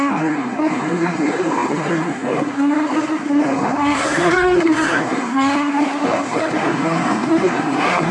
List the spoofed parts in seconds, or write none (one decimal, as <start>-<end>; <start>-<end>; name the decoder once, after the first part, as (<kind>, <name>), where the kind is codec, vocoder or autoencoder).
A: 0.0-8.1 (codec, SNAC)